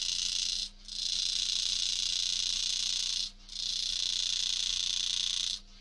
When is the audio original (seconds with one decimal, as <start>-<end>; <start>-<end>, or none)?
0.0-0.6; 2.1-2.5; 3.9-5.8